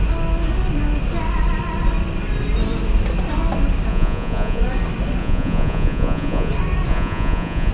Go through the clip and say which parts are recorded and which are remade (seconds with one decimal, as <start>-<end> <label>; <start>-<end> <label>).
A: 0.0-3.9 recorded; 3.9-4.6 remade; 4.6-5.2 recorded; 5.2-6.5 remade; 6.5-6.9 recorded; 6.9-7.7 remade